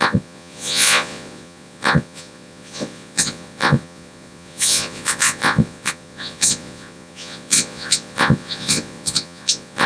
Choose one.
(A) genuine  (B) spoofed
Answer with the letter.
B